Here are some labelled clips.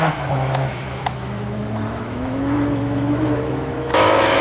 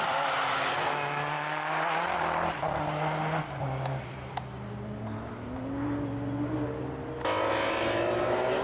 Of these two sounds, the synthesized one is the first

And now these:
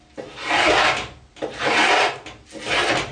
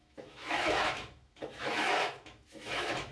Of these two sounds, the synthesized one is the second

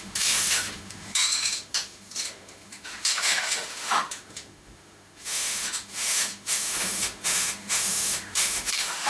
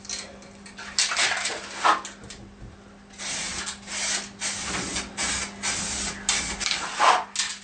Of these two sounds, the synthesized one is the first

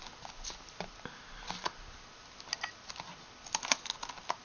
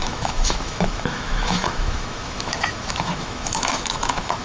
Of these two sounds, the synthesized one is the second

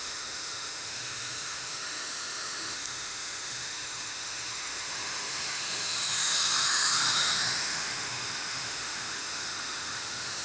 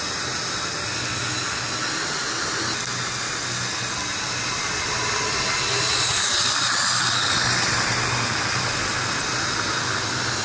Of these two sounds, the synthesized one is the first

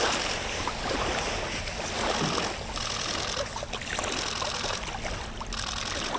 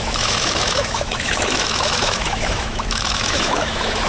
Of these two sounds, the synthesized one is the second